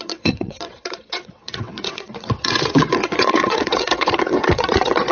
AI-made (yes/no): yes